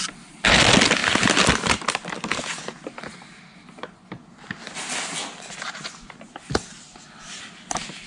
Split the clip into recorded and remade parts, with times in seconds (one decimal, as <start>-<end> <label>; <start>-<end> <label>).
0.0-8.1 recorded